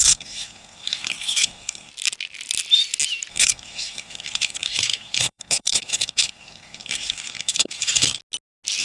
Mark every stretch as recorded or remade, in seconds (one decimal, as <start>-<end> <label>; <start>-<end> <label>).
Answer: 0.0-1.9 remade; 1.9-3.3 recorded; 3.3-8.2 remade; 8.2-8.8 recorded